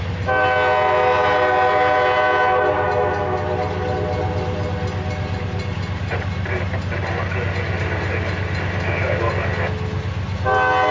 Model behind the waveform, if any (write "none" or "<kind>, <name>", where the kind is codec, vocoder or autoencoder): none